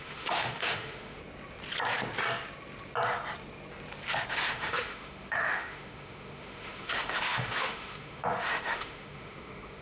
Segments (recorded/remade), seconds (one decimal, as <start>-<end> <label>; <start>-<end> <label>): 0.0-1.2 remade; 1.2-4.3 recorded; 4.3-9.8 remade